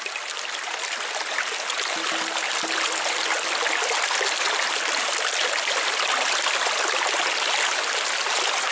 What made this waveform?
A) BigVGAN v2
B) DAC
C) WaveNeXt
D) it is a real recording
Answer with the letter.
D